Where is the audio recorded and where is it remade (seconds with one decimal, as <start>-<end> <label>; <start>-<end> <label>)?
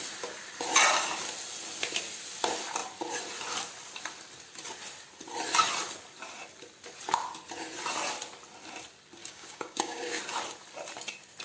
0.0-9.2 recorded; 9.2-10.2 remade; 10.2-11.4 recorded